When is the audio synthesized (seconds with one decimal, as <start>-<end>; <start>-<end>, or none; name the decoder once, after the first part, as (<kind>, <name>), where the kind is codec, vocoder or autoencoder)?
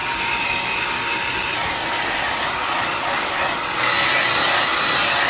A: 0.0-0.7 (vocoder, BigVGAN v2); 1.6-3.3